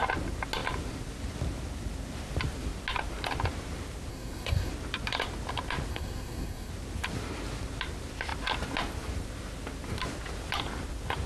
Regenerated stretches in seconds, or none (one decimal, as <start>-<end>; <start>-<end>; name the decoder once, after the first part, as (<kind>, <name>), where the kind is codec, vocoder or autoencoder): 4.1-4.7 (codec, SNAC); 5.9-6.7